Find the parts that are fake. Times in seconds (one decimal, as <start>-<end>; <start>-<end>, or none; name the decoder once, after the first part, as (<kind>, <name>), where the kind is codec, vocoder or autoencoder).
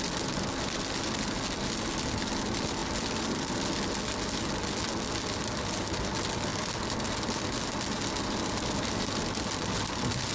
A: none